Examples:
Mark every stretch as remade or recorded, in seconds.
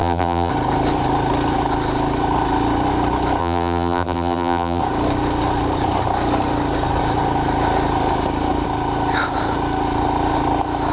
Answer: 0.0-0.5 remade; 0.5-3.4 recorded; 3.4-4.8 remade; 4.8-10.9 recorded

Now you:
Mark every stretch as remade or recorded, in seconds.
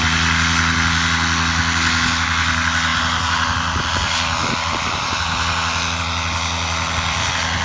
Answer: 0.0-7.6 recorded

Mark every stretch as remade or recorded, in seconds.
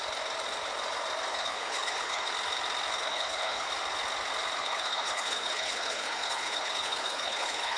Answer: 0.0-1.3 recorded; 1.3-2.3 remade; 2.3-2.9 recorded; 2.9-3.7 remade; 3.7-4.6 recorded; 4.6-7.8 remade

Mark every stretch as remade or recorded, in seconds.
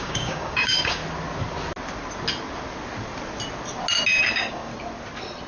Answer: 0.0-1.0 remade; 1.0-4.3 recorded; 4.3-4.7 remade; 4.7-5.5 recorded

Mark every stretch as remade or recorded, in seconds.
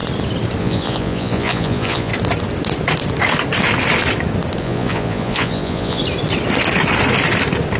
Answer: 0.0-0.6 recorded; 0.6-2.1 remade; 2.1-4.6 recorded; 4.6-6.0 remade; 6.0-7.8 recorded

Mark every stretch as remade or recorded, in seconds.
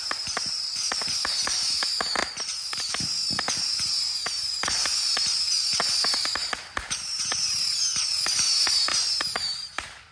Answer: 0.0-10.1 recorded